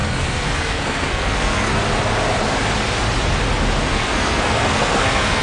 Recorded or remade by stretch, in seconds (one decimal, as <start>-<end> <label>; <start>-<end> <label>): 0.0-1.7 remade; 1.7-3.9 recorded; 3.9-5.4 remade